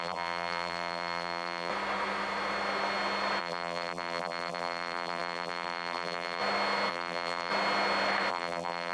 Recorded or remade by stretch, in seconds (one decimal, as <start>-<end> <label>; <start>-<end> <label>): 0.0-1.7 remade; 1.7-3.4 recorded; 3.4-6.4 remade; 6.4-6.9 recorded; 6.9-7.5 remade; 7.5-8.3 recorded; 8.3-8.9 remade